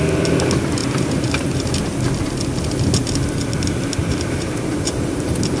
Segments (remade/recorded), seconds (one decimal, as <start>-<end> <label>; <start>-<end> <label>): 0.0-0.8 recorded; 0.8-1.7 remade; 1.7-4.0 recorded; 4.0-5.0 remade; 5.0-5.6 recorded